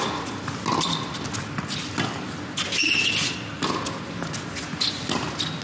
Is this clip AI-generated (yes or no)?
no